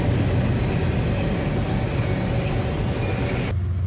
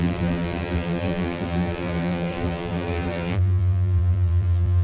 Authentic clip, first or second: first